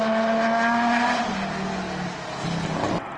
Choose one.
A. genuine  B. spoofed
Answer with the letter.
A